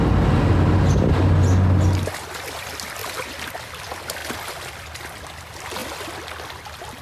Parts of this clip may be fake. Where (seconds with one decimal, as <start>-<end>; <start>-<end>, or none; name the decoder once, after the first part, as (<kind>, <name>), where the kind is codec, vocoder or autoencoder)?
none